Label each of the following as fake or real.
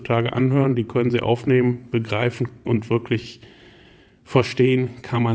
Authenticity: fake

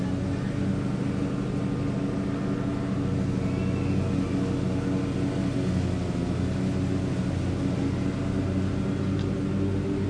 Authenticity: real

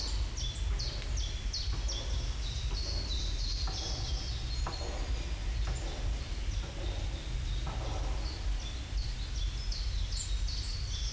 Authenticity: real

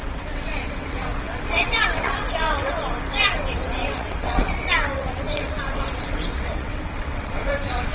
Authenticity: fake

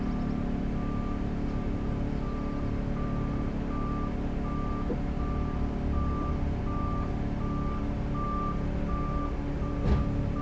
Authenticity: real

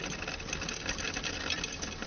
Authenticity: real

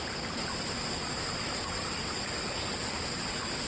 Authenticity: real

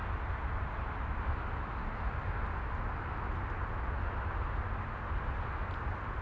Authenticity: real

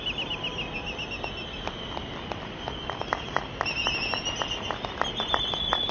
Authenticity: real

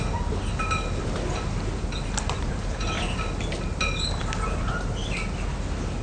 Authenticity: real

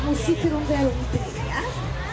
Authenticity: real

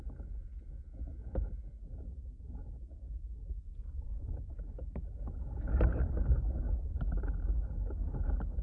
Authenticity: real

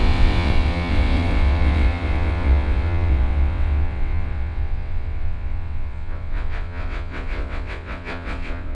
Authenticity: fake